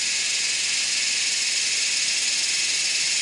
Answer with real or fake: real